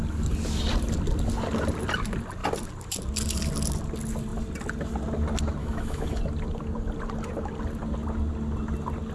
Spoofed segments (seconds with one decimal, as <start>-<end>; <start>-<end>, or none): 5.6-6.2